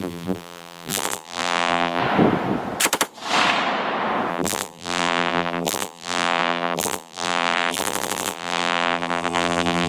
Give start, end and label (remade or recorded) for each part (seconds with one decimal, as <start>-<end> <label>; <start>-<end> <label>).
0.0-2.0 remade; 2.0-4.3 recorded; 4.3-9.9 remade